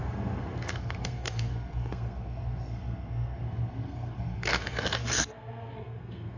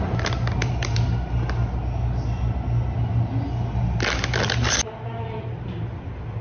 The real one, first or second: second